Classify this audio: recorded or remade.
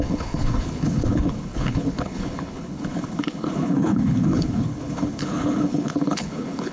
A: remade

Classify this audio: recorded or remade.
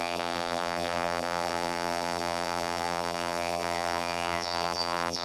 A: remade